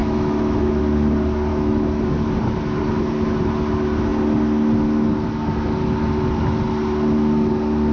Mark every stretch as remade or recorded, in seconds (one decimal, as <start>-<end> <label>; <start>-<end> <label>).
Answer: 0.0-0.8 remade; 0.8-1.5 recorded; 1.5-2.0 remade; 2.0-7.9 recorded